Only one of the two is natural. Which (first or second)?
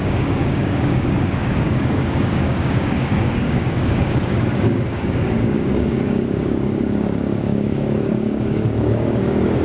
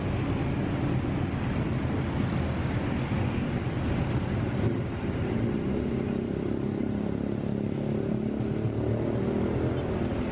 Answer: second